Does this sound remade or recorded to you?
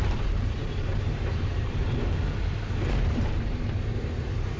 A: remade